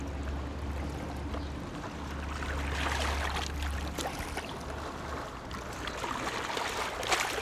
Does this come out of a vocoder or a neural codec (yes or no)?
no